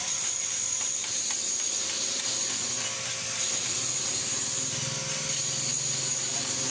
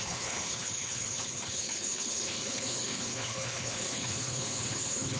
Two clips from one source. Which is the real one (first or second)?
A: first